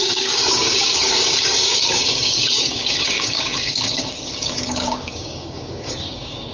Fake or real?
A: fake